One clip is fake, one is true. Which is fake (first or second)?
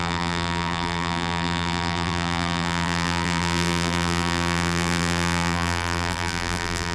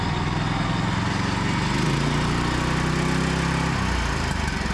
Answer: first